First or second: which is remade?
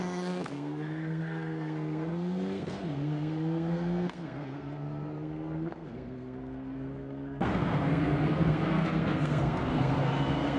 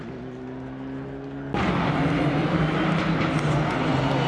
first